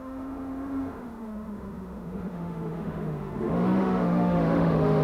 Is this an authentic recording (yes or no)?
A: no